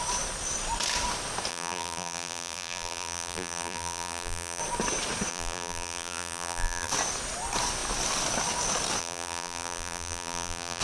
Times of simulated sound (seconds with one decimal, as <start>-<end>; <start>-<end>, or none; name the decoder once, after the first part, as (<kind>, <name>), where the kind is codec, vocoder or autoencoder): 1.5-4.6 (vocoder, BigVGAN v2); 5.3-6.9; 9.0-10.8